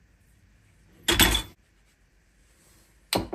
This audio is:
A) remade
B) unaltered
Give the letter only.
B